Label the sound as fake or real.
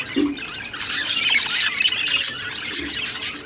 real